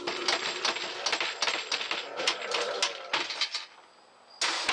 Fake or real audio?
real